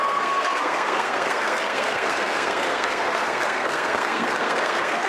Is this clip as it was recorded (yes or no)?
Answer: no